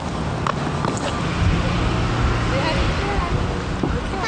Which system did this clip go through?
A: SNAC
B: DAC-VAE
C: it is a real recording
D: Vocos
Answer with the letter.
C